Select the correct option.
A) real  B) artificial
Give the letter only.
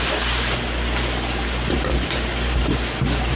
A